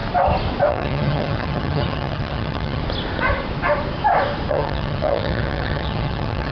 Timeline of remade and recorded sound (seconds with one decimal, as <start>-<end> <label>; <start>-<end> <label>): 0.0-0.7 recorded; 0.7-2.8 remade; 2.8-4.5 recorded; 4.5-6.5 remade

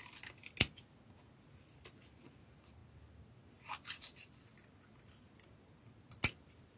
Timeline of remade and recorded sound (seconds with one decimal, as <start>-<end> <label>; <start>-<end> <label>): 0.0-6.8 recorded

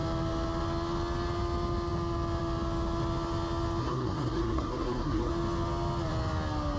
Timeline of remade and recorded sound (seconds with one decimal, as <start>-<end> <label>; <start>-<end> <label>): 0.0-3.8 recorded; 3.8-5.3 remade; 5.3-6.8 recorded

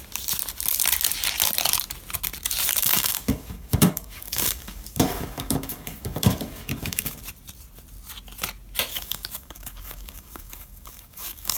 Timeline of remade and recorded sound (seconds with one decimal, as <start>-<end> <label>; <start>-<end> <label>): 0.0-2.8 recorded; 2.8-7.2 remade; 7.2-8.9 recorded; 8.9-11.6 remade

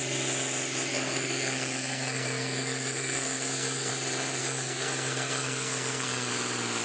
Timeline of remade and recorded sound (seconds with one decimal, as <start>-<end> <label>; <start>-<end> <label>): 0.0-0.9 recorded; 0.9-3.9 remade; 3.9-4.4 recorded; 4.4-6.3 remade; 6.3-6.8 recorded

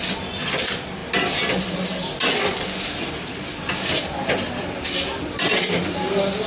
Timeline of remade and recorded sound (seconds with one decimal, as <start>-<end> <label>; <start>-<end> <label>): 0.0-6.5 recorded